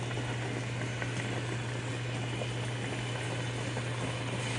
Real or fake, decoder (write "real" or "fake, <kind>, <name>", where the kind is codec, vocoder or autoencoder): real